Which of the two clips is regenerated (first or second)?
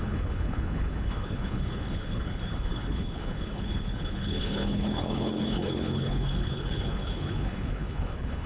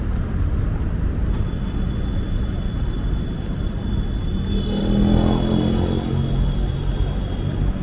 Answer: first